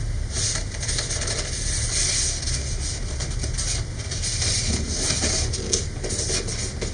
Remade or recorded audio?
recorded